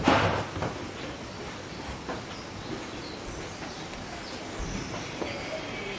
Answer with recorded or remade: recorded